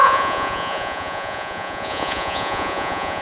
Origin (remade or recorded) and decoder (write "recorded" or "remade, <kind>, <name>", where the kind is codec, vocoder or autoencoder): remade, vocoder, Vocos